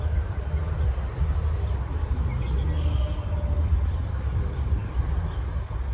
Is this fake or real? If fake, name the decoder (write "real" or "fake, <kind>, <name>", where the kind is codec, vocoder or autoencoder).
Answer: real